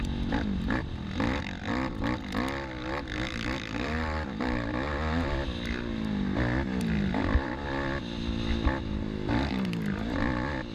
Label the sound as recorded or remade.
recorded